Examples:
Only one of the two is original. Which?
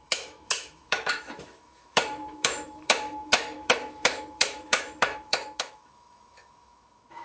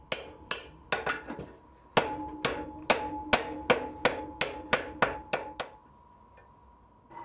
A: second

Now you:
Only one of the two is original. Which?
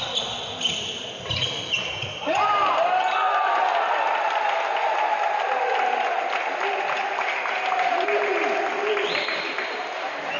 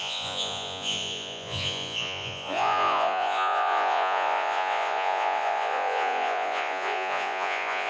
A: first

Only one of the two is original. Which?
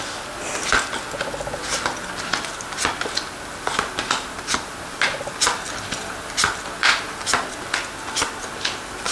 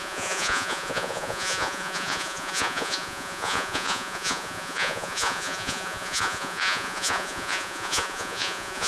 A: first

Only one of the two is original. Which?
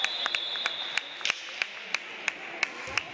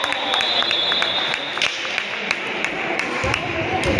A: first